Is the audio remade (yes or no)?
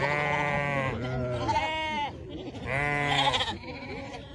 no